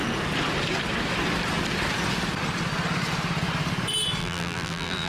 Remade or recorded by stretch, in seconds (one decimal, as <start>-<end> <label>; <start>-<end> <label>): 0.0-4.2 recorded; 4.2-5.1 remade